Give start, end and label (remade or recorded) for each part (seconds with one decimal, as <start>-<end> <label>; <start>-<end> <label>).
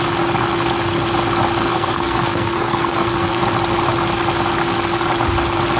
0.0-1.6 recorded; 1.6-3.4 remade; 3.4-5.8 recorded